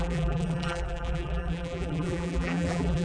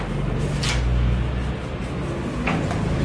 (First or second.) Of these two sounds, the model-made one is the first